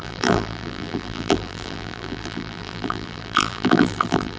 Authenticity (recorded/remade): remade